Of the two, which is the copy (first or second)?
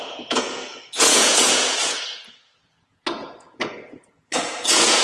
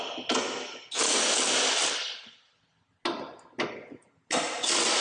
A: first